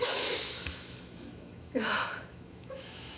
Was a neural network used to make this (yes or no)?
yes